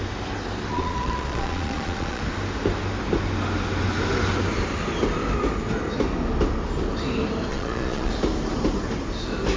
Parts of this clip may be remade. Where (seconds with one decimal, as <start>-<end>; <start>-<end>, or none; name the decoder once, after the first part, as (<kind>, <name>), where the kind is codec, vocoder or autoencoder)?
0.7-2.2 (vocoder, Vocos); 7.5-8.1